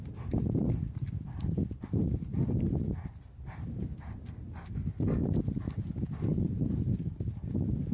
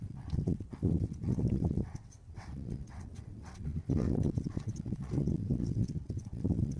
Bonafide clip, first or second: first